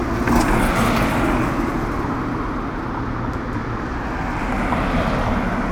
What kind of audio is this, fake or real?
real